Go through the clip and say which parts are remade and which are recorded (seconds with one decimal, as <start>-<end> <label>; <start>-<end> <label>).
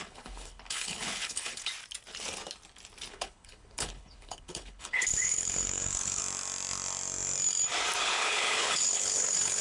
0.0-1.7 remade; 1.7-3.1 recorded; 3.1-6.2 remade; 6.2-8.0 recorded; 8.0-9.6 remade